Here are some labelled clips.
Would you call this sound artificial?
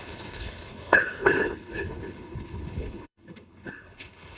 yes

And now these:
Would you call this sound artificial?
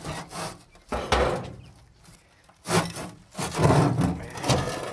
no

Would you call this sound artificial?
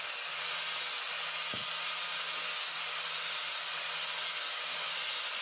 no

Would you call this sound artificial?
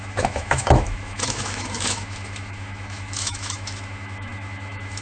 yes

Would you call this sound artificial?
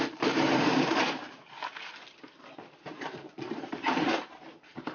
yes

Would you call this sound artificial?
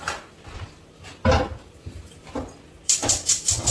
no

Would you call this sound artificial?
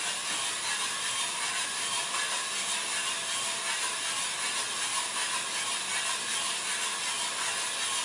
no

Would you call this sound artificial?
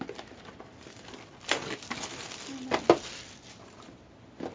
no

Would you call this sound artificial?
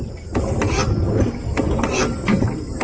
no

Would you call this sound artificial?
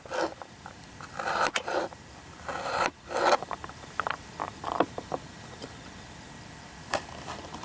yes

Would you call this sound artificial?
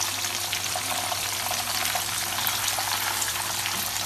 no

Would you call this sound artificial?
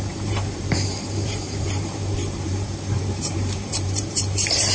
yes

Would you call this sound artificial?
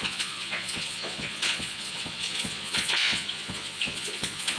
yes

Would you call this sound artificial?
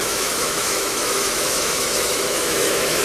yes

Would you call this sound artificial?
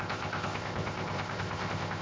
yes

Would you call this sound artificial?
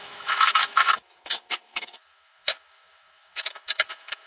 yes